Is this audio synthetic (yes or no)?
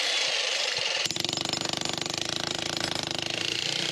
yes